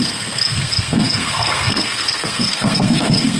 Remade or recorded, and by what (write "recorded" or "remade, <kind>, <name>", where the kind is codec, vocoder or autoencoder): remade, codec, SNAC